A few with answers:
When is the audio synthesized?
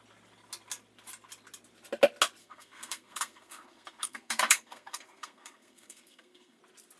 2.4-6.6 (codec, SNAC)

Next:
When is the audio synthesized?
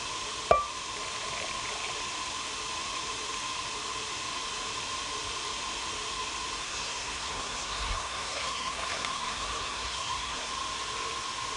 6.6-10.5 (codec, SNAC)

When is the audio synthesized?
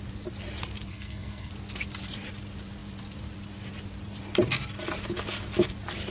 0.9-1.5 (codec, SNAC)